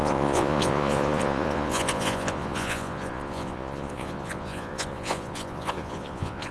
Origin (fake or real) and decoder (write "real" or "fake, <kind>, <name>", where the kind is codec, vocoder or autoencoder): fake, vocoder, Vocos